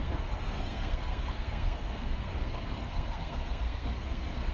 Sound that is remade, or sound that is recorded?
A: remade